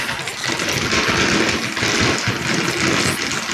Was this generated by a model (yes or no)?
no